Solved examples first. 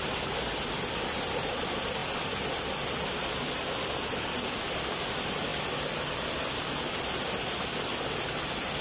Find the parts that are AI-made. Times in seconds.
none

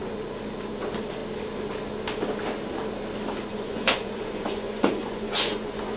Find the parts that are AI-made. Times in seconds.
3.5-6.0